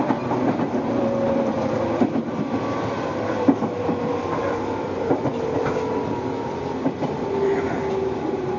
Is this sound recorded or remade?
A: remade